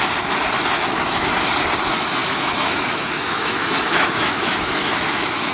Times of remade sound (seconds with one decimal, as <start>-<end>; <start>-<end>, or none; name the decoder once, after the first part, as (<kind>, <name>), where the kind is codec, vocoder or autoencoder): 2.2-5.5 (autoencoder, DAC-VAE)